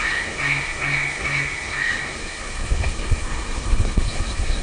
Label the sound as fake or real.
fake